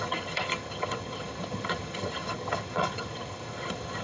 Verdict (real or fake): fake